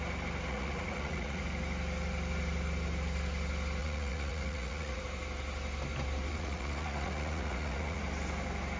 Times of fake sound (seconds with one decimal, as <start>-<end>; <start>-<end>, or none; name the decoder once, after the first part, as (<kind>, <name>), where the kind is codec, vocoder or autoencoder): 0.5-1.4 (vocoder, Vocos); 3.8-5.0; 6.3-8.0